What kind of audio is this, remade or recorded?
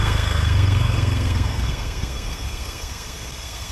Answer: remade